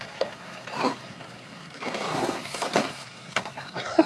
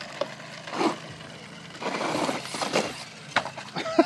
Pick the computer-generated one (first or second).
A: first